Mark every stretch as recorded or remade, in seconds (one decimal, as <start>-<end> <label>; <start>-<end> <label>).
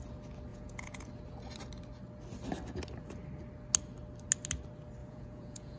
0.0-0.5 recorded; 0.5-1.1 remade; 1.1-5.0 recorded; 5.0-5.8 remade